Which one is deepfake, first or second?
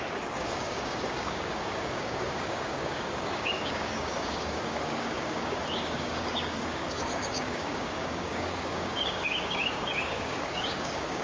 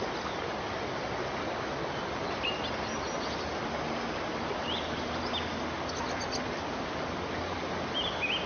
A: first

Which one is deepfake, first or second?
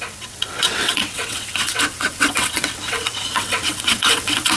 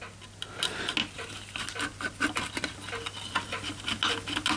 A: first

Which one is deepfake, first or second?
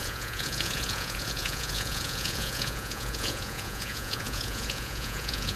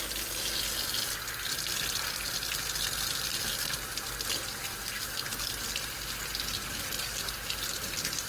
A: first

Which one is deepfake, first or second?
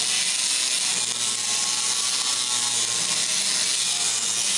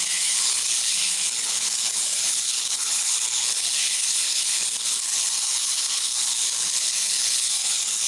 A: second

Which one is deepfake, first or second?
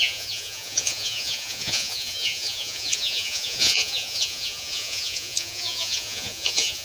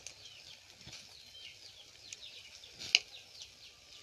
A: first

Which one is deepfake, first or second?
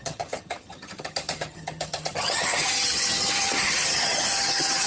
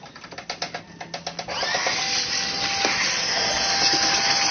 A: first